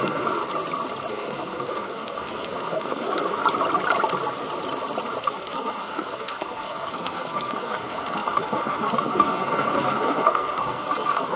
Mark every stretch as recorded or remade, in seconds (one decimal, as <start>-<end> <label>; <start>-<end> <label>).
0.0-0.4 remade; 0.4-1.1 recorded; 1.1-3.4 remade; 3.4-5.2 recorded; 5.2-11.4 remade